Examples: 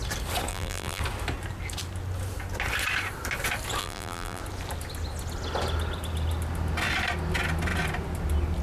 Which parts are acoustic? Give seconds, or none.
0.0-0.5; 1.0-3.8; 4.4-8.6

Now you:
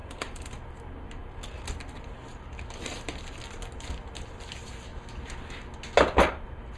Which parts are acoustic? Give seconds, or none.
4.9-6.2

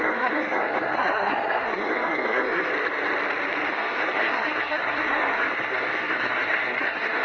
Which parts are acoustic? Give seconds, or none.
2.7-3.7

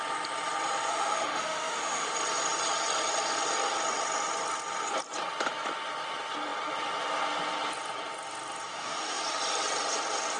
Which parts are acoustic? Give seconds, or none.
0.0-0.9; 2.1-8.7; 9.2-10.4

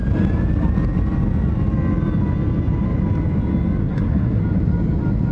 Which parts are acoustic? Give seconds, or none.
0.0-3.8; 4.4-5.3